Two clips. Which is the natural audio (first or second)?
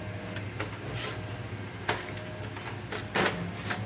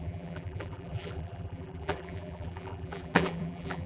first